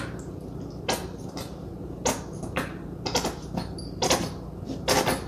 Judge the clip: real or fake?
real